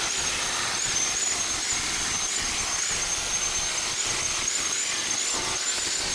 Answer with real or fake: real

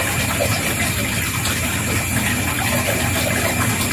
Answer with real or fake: real